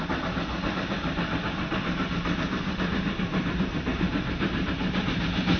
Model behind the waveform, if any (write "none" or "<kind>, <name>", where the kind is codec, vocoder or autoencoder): vocoder, BigVGAN v2